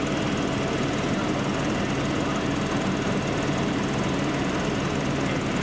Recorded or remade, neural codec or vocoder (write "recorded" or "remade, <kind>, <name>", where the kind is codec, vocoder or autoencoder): recorded